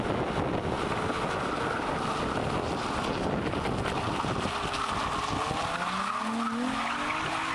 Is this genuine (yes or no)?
yes